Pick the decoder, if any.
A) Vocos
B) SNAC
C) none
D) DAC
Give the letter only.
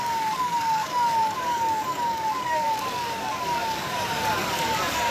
D